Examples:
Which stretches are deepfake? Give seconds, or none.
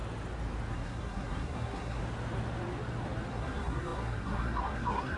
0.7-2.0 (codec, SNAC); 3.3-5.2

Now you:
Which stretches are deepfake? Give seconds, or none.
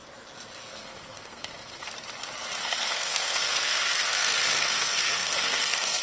0.7-1.9 (codec, SNAC); 2.6-6.0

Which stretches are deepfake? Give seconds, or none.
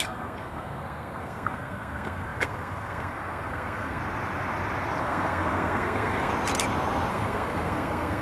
0.0-4.0 (codec, SNAC); 5.0-6.3; 7.1-8.2